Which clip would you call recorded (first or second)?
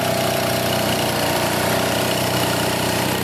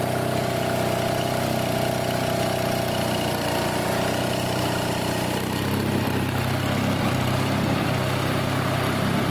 second